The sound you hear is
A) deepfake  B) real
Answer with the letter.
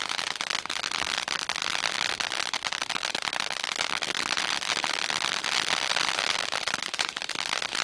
B